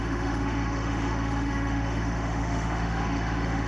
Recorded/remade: remade